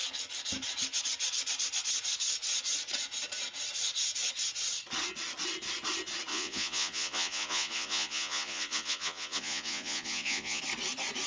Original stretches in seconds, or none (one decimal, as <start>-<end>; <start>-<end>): 0.0-6.3; 10.6-11.3